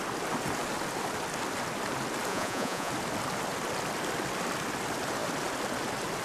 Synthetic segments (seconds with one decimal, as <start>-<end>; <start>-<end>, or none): 2.3-2.9